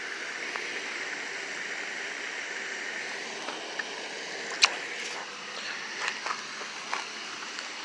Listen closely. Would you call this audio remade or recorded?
recorded